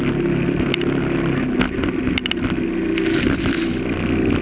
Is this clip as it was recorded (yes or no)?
yes